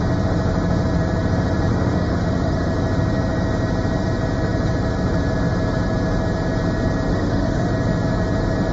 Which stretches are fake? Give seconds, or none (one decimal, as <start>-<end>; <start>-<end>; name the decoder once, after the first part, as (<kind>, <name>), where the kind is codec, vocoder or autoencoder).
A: 1.7-2.7 (autoencoder, DAC-VAE); 7.1-7.7